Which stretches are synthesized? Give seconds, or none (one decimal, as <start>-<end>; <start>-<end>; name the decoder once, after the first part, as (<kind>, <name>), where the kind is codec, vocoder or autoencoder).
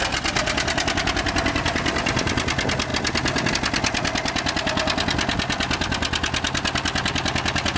none